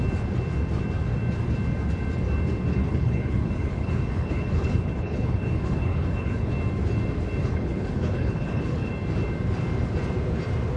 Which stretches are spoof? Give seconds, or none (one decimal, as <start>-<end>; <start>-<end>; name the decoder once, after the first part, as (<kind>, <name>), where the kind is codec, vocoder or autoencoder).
2.7-6.5 (codec, HILCodec); 7.4-8.9